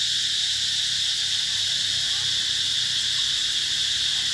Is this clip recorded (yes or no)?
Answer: yes